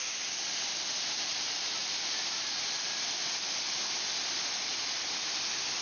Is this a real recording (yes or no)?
yes